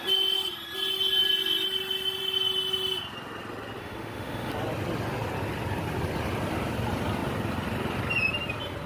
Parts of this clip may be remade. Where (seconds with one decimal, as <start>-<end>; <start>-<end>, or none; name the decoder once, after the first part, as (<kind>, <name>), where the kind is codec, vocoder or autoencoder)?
3.8-4.5 (autoencoder, DAC-VAE)